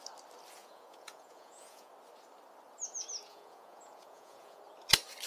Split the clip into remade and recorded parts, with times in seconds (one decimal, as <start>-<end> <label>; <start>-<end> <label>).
0.0-0.6 recorded; 0.6-1.9 remade; 1.9-3.3 recorded; 3.3-4.6 remade; 4.6-5.3 recorded